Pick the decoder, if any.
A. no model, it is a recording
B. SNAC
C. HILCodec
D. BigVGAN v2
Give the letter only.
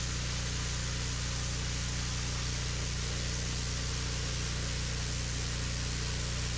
A